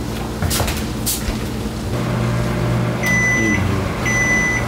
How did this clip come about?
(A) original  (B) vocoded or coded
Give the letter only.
A